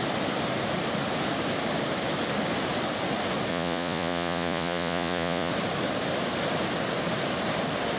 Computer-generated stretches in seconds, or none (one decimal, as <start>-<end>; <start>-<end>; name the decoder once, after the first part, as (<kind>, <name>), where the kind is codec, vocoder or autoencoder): 3.5-5.5 (vocoder, Vocos)